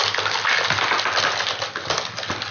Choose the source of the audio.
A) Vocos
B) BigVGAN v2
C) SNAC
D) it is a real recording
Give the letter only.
D